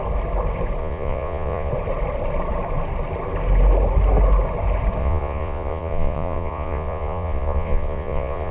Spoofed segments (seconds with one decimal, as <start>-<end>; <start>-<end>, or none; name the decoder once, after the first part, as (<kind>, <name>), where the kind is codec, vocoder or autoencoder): 0.8-1.7 (vocoder, Vocos); 5.0-8.5